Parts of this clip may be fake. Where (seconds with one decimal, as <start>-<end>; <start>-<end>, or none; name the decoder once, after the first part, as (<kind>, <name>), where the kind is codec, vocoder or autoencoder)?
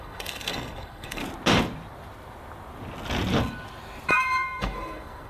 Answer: 0.0-1.2 (codec, SNAC); 4.1-5.3